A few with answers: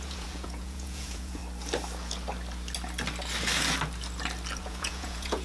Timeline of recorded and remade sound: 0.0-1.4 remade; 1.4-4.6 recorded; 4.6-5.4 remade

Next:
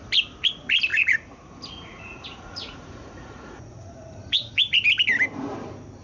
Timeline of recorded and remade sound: 0.0-0.9 recorded; 0.9-4.5 remade; 4.5-6.0 recorded

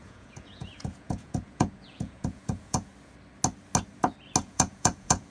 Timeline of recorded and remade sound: 0.0-2.9 remade; 2.9-4.4 recorded; 4.4-5.3 remade

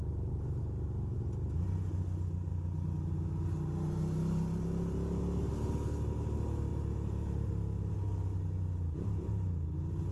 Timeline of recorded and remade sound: 0.0-10.1 recorded

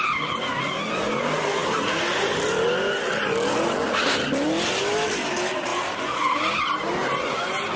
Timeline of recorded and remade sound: 0.0-7.8 recorded

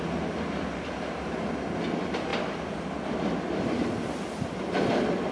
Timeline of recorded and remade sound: 0.0-5.3 recorded